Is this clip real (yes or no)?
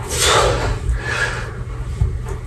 yes